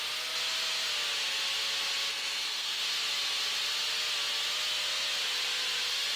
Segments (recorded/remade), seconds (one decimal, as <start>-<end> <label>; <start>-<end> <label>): 0.0-2.1 recorded; 2.1-2.8 remade; 2.8-6.2 recorded